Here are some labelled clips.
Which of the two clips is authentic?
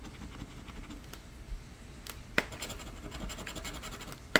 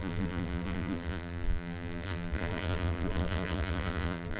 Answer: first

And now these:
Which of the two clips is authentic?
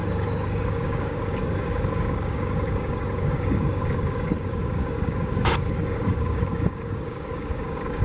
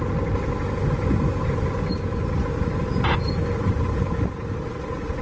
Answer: second